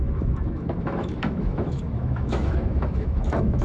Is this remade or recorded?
remade